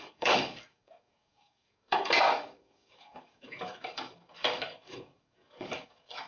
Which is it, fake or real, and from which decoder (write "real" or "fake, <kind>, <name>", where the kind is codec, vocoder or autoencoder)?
fake, codec, DAC